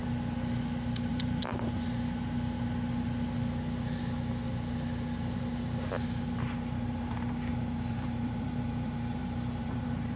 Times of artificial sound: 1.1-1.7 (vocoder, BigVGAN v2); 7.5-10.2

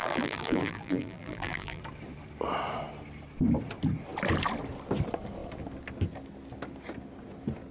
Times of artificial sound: 0.0-1.8 (vocoder, BigVGAN v2)

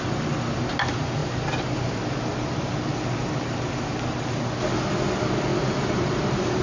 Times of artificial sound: 5.5-6.6 (vocoder, BigVGAN v2)

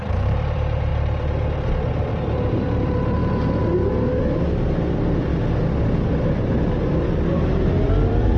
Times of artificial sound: 0.0-3.2 (vocoder, BigVGAN v2); 4.4-5.3; 6.0-8.4

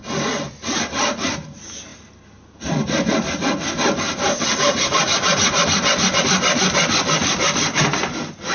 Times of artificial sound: 0.0-8.5 (vocoder, BigVGAN v2)

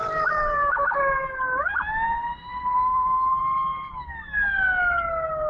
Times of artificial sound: 0.0-1.0 (vocoder, BigVGAN v2); 2.5-3.4

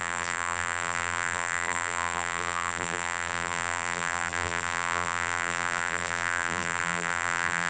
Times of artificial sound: 0.0-7.7 (vocoder, BigVGAN v2)

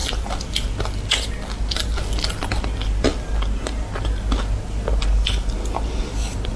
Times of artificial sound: none